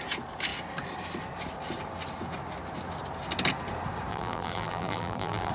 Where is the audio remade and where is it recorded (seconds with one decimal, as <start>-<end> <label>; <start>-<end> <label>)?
0.0-4.1 recorded; 4.1-5.5 remade